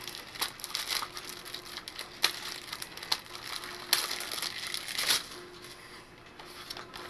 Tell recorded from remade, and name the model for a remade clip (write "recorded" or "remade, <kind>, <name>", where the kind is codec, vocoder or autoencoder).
recorded